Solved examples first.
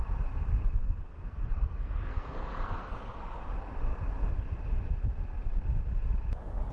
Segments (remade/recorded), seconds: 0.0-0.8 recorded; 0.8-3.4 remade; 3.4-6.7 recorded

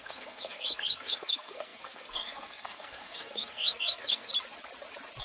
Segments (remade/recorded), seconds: 0.0-4.3 remade; 4.3-5.2 recorded